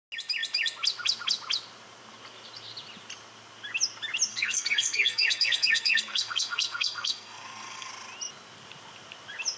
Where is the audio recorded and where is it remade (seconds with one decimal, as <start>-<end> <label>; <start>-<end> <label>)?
0.0-4.3 recorded; 4.3-7.9 remade; 7.9-9.6 recorded